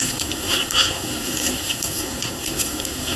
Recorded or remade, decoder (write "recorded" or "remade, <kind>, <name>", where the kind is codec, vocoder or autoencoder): remade, codec, SNAC